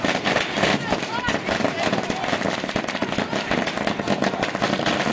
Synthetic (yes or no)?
no